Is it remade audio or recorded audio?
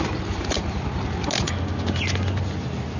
recorded